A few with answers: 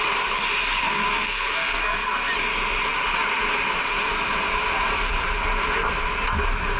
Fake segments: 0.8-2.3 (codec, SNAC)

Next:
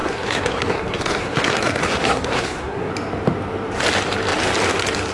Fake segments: 0.0-2.9 (codec, SNAC)

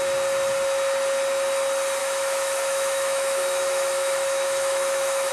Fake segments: 2.0-5.3 (autoencoder, DAC-VAE)

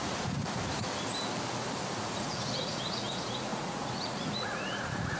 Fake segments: 0.0-0.4 (vocoder, Vocos); 1.9-5.2

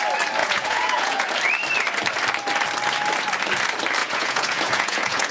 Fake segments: 0.4-1.3 (vocoder, Vocos); 4.0-5.3

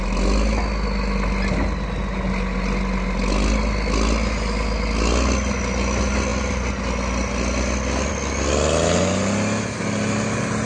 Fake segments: none